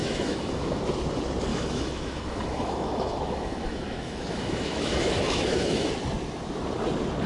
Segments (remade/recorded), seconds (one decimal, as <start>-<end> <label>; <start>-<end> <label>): 0.0-0.8 remade; 0.8-1.5 recorded; 1.5-5.9 remade; 5.9-7.3 recorded